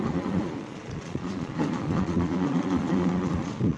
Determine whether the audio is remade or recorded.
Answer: remade